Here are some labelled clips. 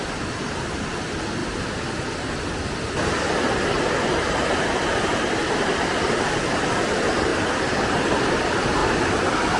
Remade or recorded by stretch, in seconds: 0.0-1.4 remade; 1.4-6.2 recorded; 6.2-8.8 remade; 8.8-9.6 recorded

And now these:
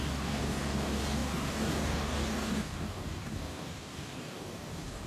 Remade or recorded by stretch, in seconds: 0.0-5.1 remade